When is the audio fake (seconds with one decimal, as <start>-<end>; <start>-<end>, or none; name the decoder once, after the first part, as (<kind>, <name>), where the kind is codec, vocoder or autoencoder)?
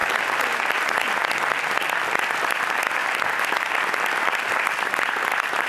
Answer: 1.6-3.0 (vocoder, BigVGAN v2); 4.1-5.7